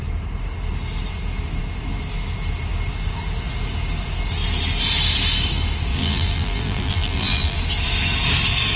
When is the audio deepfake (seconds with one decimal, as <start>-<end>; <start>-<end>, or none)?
5.9-7.6